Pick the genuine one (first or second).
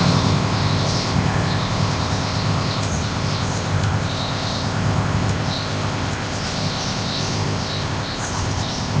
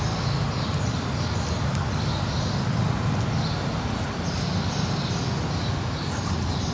second